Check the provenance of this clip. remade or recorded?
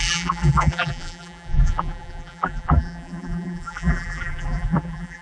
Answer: remade